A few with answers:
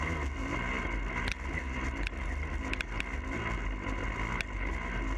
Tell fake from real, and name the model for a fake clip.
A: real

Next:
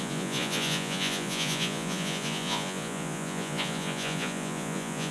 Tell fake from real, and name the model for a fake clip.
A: fake, vocoder, Vocos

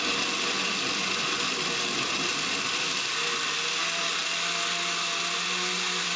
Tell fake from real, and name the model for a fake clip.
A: real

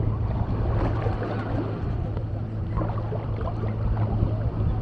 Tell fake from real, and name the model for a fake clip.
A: real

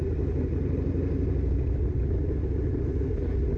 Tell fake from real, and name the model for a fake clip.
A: real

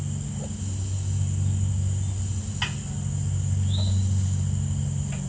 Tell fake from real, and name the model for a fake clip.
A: real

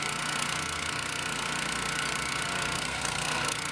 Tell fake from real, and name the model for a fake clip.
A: fake, codec, SNAC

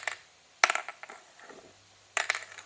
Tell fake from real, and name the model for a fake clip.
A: real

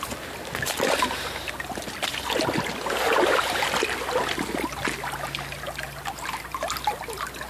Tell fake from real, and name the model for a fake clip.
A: real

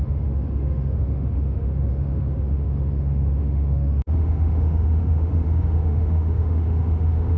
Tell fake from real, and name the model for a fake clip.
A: fake, autoencoder, DAC-VAE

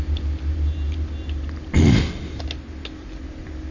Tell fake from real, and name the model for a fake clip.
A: real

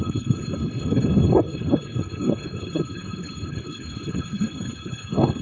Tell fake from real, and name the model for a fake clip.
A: fake, codec, HILCodec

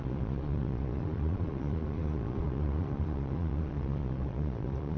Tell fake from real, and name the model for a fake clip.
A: fake, vocoder, Vocos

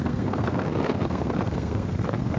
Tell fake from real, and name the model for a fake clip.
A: fake, codec, SNAC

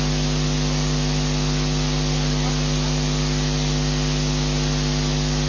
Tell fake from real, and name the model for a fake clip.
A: real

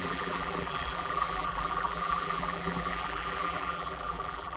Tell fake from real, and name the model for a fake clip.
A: fake, vocoder, BigVGAN v2